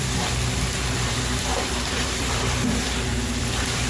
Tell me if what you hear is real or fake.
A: fake